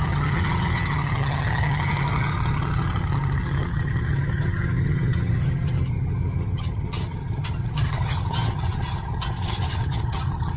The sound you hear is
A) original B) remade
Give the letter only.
B